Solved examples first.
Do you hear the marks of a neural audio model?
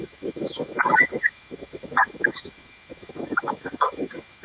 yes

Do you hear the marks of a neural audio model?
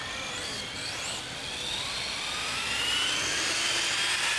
no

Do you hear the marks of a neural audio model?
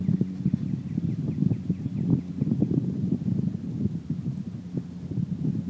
no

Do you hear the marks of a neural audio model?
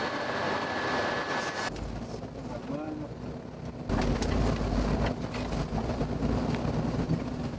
no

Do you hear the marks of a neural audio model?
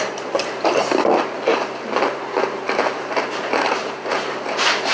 yes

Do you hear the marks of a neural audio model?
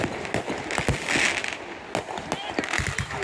no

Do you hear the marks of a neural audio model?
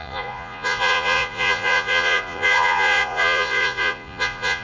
yes